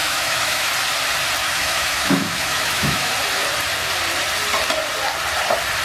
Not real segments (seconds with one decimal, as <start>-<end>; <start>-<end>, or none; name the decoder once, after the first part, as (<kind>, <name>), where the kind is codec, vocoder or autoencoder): 0.0-0.7 (autoencoder, DAC-VAE); 1.4-3.1